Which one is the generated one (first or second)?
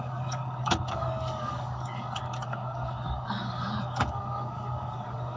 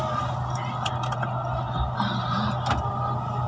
first